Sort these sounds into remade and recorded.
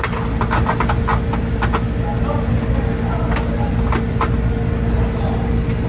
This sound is recorded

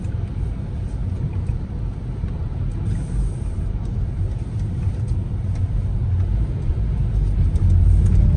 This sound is recorded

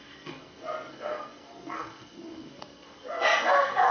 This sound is remade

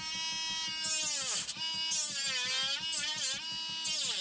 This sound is recorded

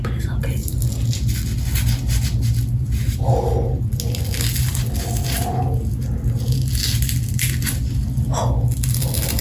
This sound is recorded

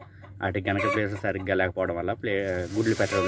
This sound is recorded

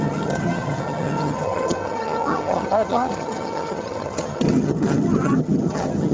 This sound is remade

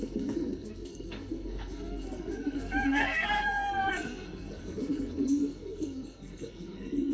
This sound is remade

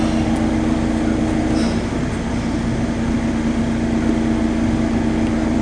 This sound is recorded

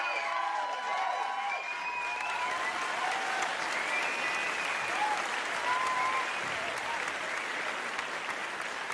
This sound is recorded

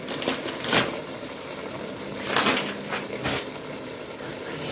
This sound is recorded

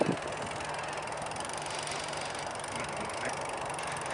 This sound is recorded